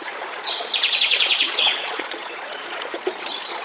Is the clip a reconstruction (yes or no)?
yes